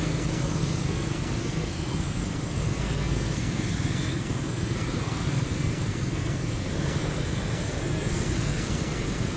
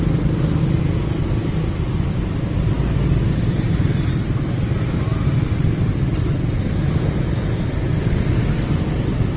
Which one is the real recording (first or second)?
second